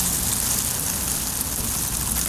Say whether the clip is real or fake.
real